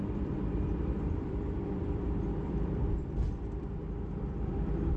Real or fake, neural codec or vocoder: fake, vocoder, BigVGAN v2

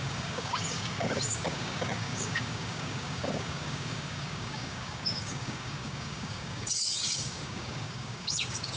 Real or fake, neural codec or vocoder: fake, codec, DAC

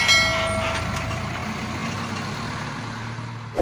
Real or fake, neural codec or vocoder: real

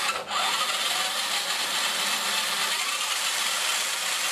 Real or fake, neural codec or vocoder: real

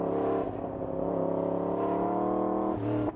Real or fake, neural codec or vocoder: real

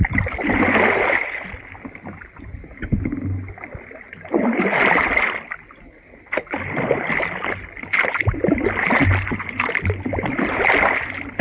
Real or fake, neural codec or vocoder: real